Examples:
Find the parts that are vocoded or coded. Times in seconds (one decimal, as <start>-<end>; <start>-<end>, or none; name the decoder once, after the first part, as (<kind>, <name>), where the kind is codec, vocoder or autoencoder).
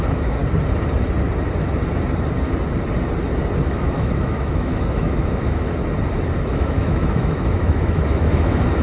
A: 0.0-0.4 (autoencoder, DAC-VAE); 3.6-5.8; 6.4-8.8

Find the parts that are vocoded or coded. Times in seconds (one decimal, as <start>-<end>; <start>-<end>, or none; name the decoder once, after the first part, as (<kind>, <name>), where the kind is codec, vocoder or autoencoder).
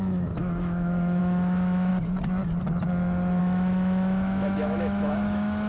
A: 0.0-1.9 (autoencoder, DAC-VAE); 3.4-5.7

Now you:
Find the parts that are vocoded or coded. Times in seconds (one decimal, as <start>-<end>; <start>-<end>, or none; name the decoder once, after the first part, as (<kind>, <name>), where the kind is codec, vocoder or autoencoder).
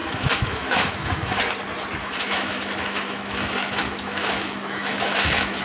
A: 0.0-1.4 (autoencoder, DAC-VAE); 2.0-5.6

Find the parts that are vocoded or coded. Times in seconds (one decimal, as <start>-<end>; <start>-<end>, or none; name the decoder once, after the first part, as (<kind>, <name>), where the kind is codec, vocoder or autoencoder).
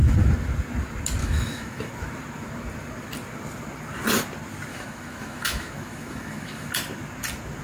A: 1.2-1.9 (autoencoder, DAC-VAE); 4.7-6.7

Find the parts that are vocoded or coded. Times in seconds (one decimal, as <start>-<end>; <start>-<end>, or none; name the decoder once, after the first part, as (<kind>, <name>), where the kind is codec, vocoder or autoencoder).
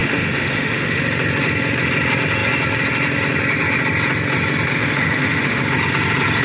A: 0.0-1.0 (autoencoder, DAC-VAE); 4.7-5.6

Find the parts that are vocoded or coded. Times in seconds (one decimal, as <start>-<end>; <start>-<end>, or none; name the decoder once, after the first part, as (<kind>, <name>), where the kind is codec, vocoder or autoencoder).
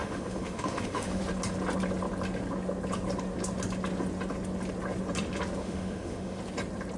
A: 0.0-1.2 (autoencoder, DAC-VAE); 5.6-6.4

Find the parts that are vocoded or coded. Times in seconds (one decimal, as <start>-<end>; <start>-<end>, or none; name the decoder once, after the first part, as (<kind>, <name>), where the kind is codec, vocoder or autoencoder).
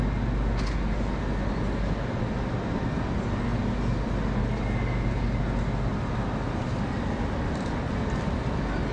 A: none